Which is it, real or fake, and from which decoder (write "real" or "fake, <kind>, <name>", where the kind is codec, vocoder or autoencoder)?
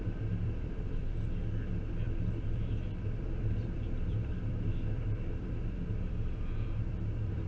fake, vocoder, BigVGAN v2